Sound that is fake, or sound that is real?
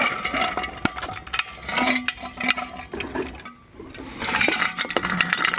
real